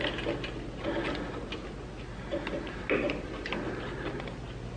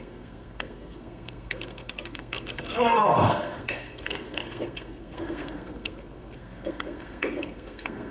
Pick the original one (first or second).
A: first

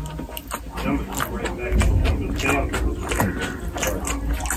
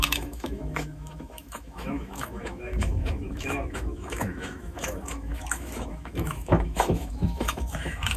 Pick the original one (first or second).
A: first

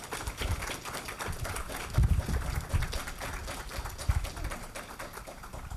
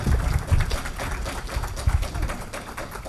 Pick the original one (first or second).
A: second